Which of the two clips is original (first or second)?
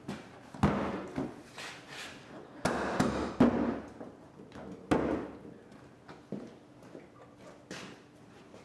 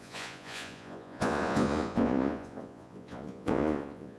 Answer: first